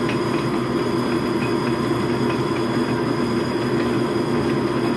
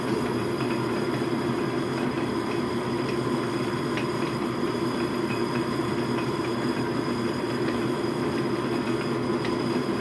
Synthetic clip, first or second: second